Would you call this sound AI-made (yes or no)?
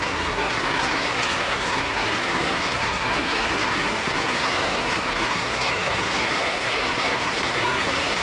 yes